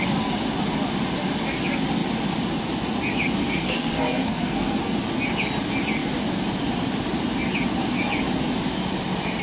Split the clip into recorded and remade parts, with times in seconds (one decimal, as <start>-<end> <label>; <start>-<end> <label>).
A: 0.0-3.4 recorded; 3.4-4.8 remade; 4.8-9.4 recorded